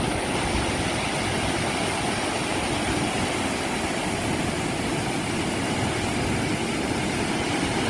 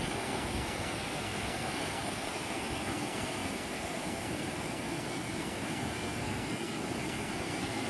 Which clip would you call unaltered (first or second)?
first